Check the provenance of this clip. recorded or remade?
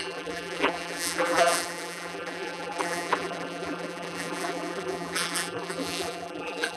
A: remade